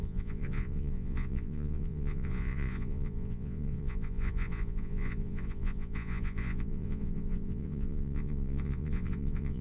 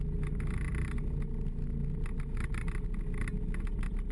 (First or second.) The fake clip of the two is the first